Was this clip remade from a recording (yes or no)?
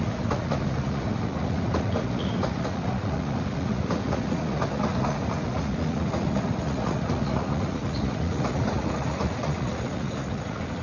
yes